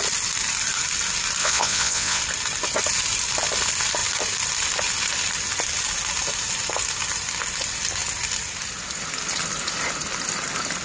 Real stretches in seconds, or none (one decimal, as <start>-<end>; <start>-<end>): 0.0-1.4; 2.2-10.8